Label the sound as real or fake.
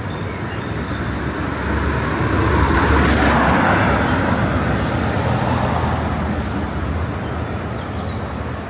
real